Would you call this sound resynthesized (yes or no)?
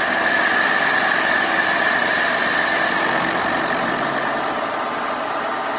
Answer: no